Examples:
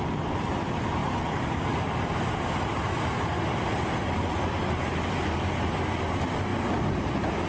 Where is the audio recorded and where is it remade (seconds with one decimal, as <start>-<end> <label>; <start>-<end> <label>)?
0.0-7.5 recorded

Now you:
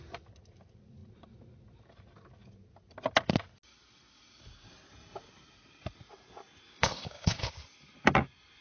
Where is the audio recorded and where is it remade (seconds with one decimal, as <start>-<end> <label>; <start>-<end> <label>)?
0.0-6.7 recorded; 6.7-7.5 remade; 7.5-8.6 recorded

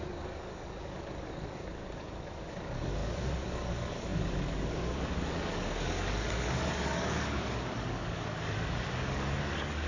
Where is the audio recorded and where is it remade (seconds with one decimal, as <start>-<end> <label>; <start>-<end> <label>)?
0.0-9.9 remade